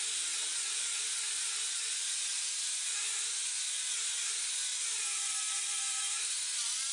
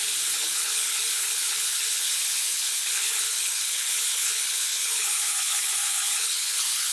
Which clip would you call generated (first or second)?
second